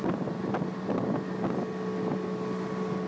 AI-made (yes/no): no